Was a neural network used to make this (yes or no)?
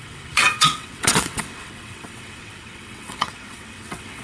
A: yes